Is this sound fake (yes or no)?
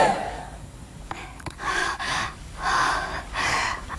yes